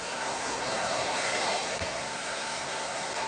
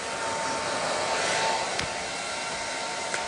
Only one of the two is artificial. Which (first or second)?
first